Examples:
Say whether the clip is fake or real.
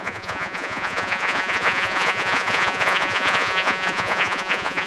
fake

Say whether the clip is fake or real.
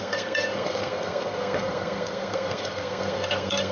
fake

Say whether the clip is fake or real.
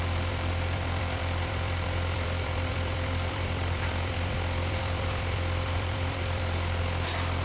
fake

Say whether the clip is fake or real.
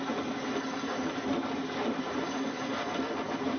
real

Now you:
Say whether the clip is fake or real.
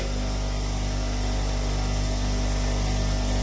real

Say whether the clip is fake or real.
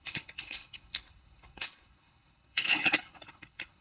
fake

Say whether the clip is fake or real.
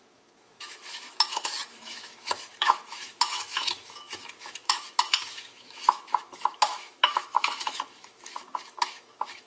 fake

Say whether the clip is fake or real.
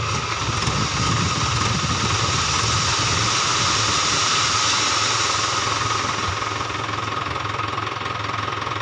real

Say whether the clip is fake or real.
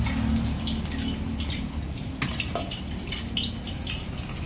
real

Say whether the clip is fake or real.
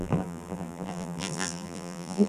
fake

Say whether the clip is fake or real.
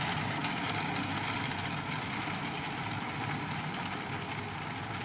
real